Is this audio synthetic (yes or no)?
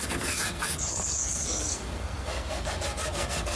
yes